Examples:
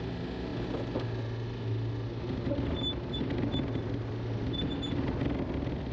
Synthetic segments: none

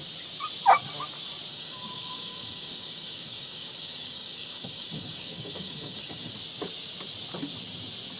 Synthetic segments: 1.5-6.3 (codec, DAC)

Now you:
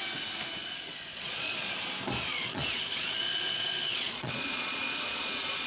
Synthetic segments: 0.6-1.7 (vocoder, Vocos); 2.3-5.7

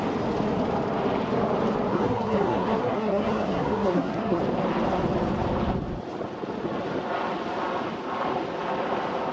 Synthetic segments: 1.9-4.4 (codec, SNAC)

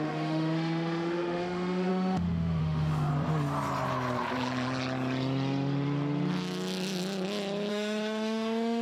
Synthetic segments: 0.0-3.1 (autoencoder, DAC-VAE); 7.7-8.8

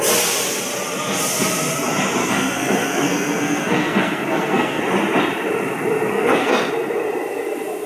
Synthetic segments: 2.2-4.8 (codec, SNAC); 6.1-6.7

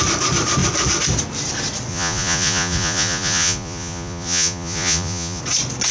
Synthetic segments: 1.9-5.4 (vocoder, Vocos)

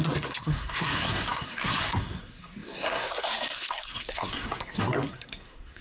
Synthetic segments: 0.0-5.8 (codec, SNAC)